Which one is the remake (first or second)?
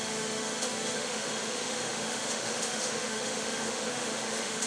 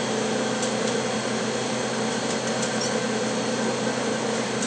first